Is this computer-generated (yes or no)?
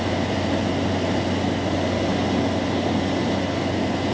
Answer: no